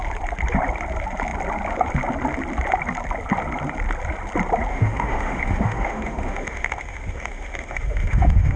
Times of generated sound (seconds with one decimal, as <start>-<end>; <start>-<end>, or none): 4.7-8.6